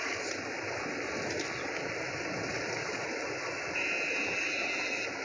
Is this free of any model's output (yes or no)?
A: yes